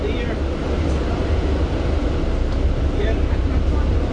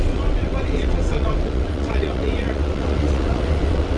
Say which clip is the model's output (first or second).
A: second